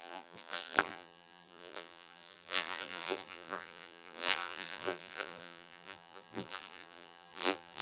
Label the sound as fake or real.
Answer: fake